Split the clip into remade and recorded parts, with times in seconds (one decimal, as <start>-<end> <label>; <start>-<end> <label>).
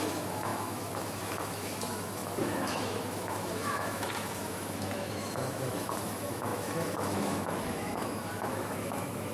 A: 0.0-9.3 remade